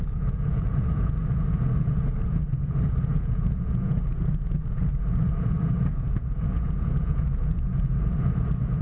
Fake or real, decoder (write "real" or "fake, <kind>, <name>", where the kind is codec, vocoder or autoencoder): fake, vocoder, Vocos